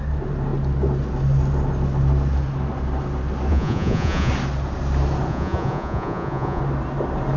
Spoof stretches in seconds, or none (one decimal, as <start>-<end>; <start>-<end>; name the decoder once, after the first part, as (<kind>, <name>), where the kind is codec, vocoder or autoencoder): 3.5-4.3 (vocoder, Vocos); 5.3-6.6